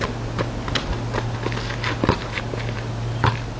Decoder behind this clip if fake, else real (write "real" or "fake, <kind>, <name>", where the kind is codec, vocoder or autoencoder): real